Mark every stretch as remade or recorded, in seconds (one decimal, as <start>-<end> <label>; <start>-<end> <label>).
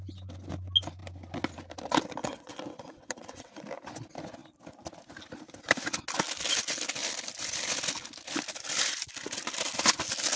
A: 0.0-2.2 recorded; 2.2-3.6 remade; 3.6-10.4 recorded